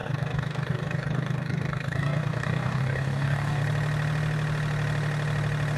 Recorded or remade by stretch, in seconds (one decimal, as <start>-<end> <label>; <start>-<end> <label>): 0.0-3.6 remade; 3.6-5.8 recorded